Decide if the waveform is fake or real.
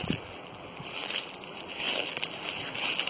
fake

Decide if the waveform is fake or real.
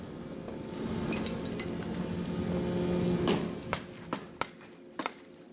real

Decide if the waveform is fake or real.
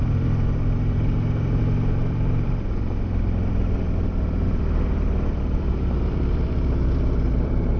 fake